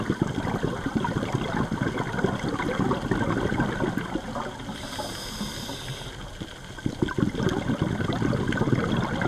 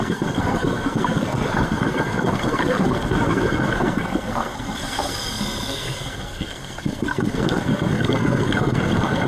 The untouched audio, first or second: first